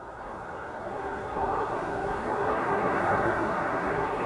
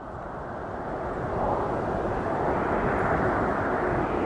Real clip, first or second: second